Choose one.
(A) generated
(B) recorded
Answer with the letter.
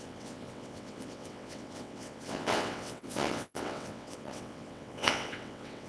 A